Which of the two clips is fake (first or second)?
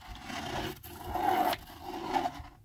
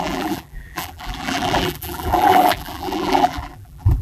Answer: second